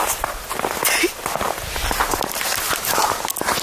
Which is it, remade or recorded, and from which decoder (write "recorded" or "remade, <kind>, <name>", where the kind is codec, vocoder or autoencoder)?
recorded